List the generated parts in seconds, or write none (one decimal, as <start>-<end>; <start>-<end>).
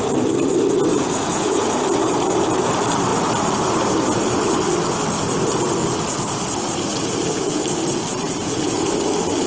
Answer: 0.9-1.7; 6.9-7.6; 8.1-8.7